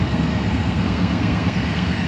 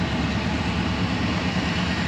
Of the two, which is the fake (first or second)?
first